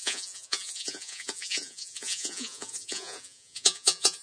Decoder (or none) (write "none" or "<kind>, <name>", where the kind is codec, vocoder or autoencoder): vocoder, Vocos